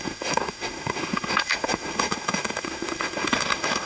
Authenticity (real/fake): fake